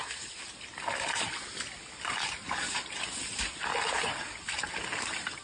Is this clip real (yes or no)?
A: yes